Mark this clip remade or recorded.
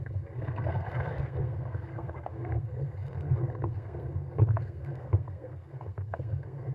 remade